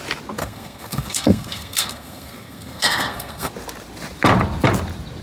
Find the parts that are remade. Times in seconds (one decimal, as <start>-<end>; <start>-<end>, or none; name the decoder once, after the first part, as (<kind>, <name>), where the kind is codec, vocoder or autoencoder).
0.4-3.5 (codec, SNAC)